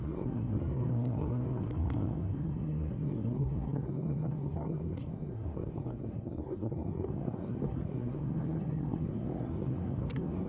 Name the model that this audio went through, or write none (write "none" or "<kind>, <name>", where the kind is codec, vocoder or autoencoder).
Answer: codec, SNAC